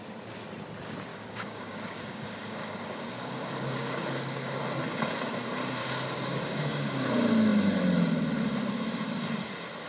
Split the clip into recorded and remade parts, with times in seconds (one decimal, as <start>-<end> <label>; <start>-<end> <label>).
0.0-1.1 recorded; 1.1-4.6 remade; 4.6-5.8 recorded; 5.8-7.1 remade; 7.1-9.9 recorded